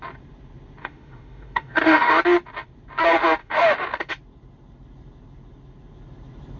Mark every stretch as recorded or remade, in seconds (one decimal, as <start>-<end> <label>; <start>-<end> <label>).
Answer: 0.0-0.8 recorded; 0.8-2.1 remade; 2.1-3.4 recorded; 3.4-4.1 remade; 4.1-6.6 recorded